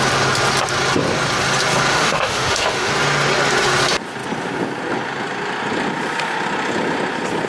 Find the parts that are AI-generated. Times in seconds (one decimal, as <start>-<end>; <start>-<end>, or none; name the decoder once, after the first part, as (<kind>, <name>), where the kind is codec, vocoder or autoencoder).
1.9-2.9 (autoencoder, DAC-VAE)